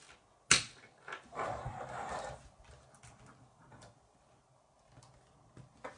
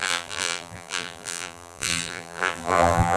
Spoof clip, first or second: second